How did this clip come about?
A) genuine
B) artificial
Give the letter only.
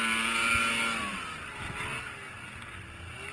A